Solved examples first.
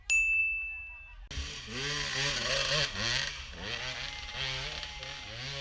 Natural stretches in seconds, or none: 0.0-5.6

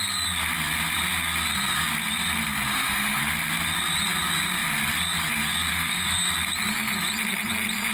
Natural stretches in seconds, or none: 0.0-2.7; 3.2-5.7; 6.3-7.9

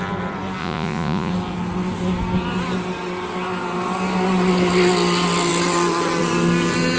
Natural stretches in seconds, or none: 0.0-0.6; 1.3-7.0